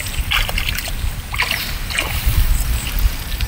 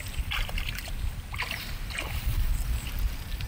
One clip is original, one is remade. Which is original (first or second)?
first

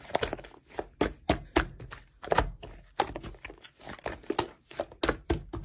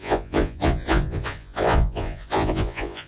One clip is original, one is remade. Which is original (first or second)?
first